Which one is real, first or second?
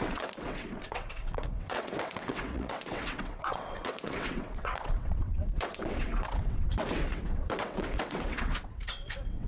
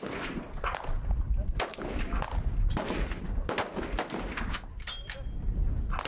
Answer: second